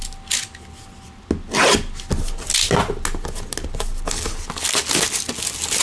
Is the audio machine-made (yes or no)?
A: no